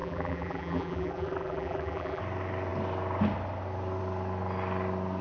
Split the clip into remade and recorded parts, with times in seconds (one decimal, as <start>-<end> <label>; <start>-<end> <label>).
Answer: 0.0-2.2 remade; 2.2-5.2 recorded

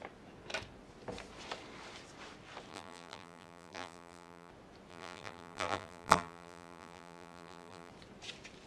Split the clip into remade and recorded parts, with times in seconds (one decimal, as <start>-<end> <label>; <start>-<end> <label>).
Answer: 0.0-2.7 recorded; 2.7-4.5 remade; 4.5-4.9 recorded; 4.9-7.9 remade; 7.9-8.7 recorded